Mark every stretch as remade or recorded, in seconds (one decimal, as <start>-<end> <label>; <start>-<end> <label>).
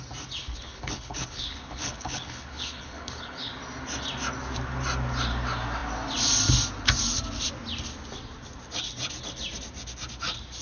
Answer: 0.0-0.4 recorded; 0.4-3.5 remade; 3.5-10.6 recorded